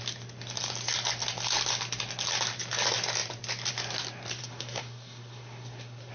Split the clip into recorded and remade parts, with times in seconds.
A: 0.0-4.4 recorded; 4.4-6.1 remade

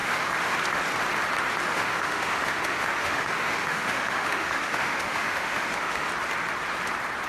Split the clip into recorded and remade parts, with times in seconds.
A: 0.0-0.5 remade; 0.5-1.7 recorded; 1.7-6.1 remade; 6.1-7.3 recorded

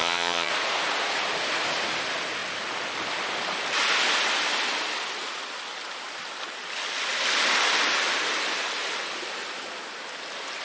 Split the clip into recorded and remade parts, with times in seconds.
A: 0.0-0.5 remade; 0.5-10.6 recorded